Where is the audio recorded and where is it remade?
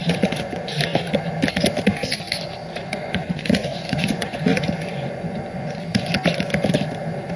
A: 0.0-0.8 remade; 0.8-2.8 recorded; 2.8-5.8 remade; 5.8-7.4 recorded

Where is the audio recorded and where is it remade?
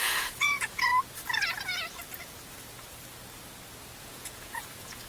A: 0.0-0.9 remade; 0.9-4.0 recorded; 4.0-5.1 remade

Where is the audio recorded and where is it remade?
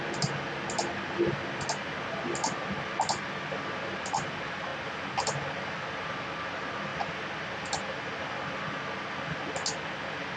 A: 0.0-10.4 recorded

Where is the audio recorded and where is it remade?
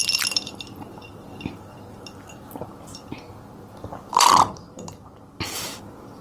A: 0.0-3.9 recorded; 3.9-5.8 remade; 5.8-6.2 recorded